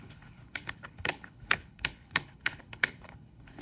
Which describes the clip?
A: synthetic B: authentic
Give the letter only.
A